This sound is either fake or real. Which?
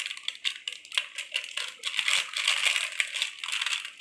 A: real